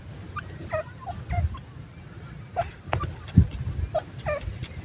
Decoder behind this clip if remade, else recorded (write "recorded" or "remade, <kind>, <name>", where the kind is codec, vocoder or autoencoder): recorded